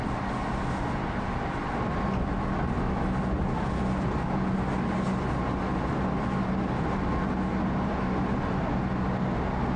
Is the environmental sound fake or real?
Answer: real